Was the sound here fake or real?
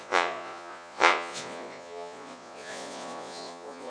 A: fake